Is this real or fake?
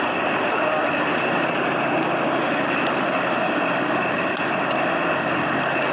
real